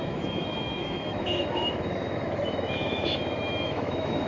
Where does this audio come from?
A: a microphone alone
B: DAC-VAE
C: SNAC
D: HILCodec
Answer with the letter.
B